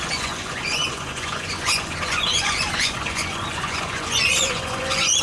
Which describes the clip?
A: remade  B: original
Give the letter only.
A